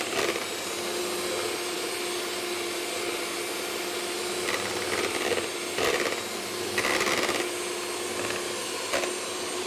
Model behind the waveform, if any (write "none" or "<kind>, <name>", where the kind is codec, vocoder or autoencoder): none